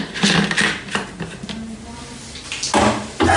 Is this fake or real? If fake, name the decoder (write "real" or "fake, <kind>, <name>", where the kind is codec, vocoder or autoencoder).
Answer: real